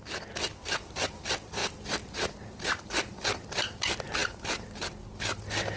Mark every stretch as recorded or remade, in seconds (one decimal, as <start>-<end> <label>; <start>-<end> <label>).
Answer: 0.0-5.8 recorded